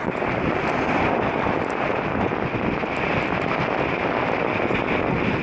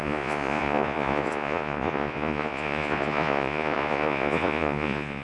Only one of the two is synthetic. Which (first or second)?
second